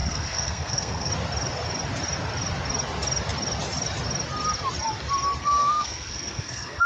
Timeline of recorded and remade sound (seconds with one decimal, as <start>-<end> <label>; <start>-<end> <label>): 0.0-1.1 remade; 1.1-5.4 recorded; 5.4-6.9 remade